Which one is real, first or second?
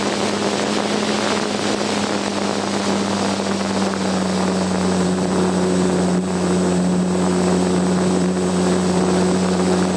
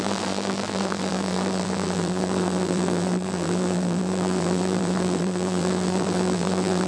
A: first